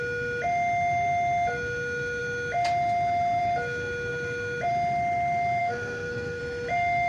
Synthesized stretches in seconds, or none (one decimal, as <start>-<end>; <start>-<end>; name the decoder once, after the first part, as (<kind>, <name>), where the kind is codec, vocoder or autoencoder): 5.6-6.4 (codec, SNAC)